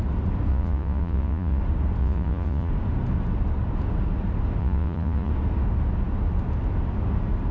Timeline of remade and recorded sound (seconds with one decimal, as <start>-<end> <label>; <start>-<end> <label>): 0.0-0.5 recorded; 0.5-1.6 remade; 1.6-2.0 recorded; 2.0-2.7 remade; 2.7-4.6 recorded; 4.6-5.3 remade; 5.3-7.5 recorded